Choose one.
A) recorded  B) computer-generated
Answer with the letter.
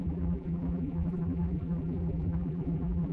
B